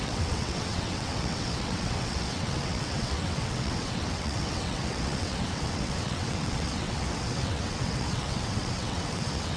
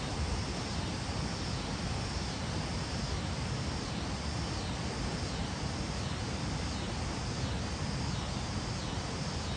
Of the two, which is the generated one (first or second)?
first